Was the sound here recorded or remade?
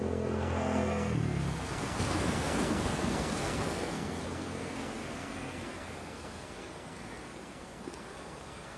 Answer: remade